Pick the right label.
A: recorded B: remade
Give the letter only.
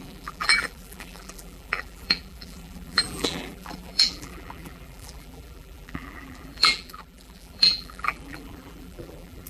B